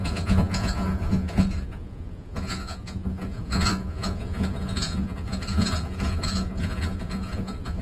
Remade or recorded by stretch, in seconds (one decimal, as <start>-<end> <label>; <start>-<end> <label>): 0.0-7.8 remade